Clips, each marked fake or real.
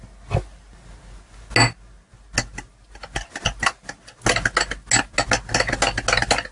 real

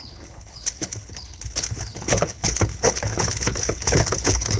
fake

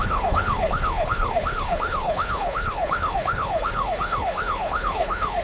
fake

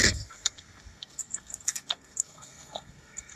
fake